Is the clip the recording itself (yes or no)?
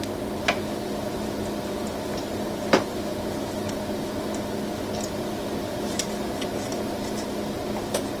yes